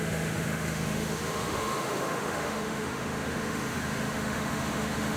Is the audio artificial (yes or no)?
yes